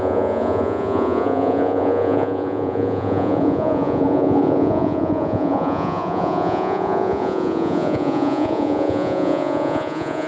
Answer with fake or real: fake